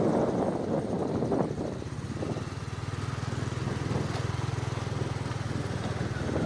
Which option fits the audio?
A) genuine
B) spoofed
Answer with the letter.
A